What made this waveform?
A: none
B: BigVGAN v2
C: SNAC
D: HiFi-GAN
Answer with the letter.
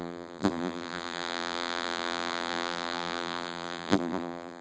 B